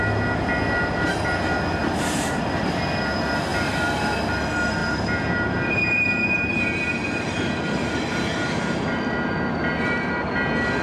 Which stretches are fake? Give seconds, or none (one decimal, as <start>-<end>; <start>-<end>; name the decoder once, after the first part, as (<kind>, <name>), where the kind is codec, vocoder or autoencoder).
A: 1.8-2.8 (vocoder, BigVGAN v2); 3.5-4.1; 4.8-10.1